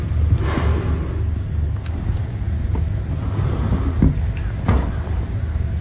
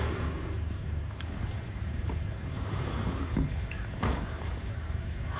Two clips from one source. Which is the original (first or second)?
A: first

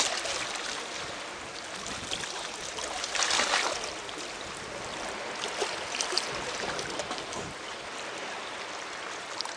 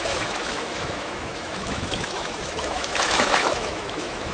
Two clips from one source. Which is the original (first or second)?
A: first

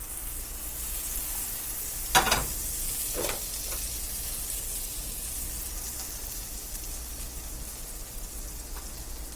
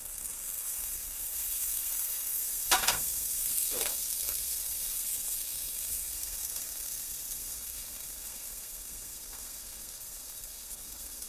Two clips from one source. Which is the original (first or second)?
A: first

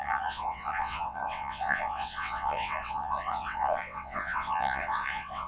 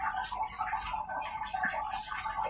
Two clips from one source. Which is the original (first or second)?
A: second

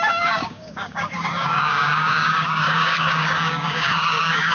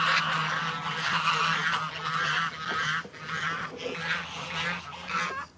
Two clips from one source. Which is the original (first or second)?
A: second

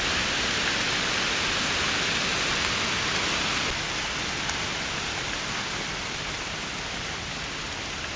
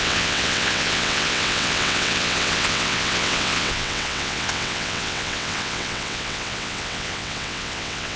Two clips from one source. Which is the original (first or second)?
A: first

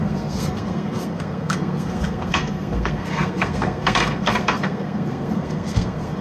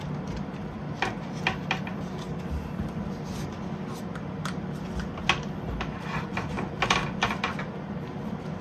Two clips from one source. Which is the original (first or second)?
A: second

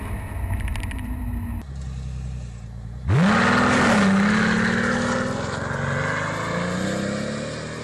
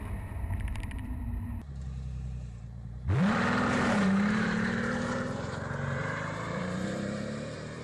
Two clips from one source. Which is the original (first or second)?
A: first